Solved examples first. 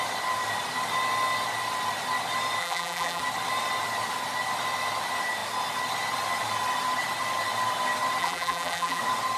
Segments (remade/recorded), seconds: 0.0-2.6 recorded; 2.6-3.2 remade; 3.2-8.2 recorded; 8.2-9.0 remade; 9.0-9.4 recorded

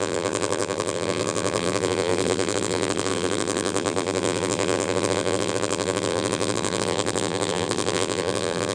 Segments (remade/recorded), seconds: 0.0-8.7 remade

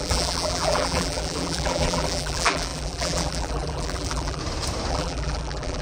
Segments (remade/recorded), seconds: 0.0-4.4 remade; 4.4-4.9 recorded; 4.9-5.8 remade

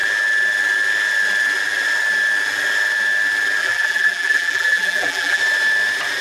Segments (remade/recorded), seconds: 0.0-3.6 recorded; 3.6-5.4 remade; 5.4-6.2 recorded

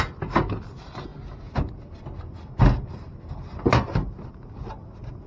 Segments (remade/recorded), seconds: 0.0-5.3 recorded